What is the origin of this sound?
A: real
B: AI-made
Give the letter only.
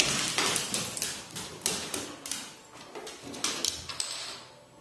A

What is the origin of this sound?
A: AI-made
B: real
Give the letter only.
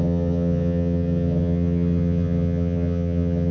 A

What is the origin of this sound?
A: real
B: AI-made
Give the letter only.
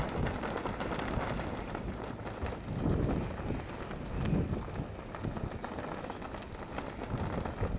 A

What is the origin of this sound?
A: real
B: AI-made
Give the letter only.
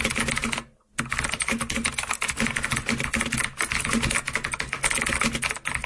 A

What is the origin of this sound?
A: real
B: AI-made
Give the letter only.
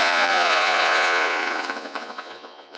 B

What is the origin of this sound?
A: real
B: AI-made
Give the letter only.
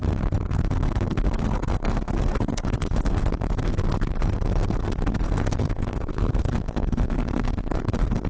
B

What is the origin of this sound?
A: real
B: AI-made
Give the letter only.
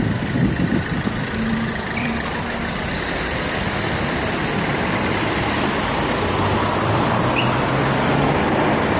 B